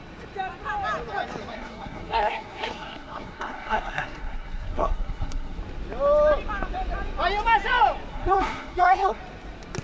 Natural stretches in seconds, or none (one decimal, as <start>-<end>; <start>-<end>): 0.0-1.5; 5.6-8.1; 9.2-9.8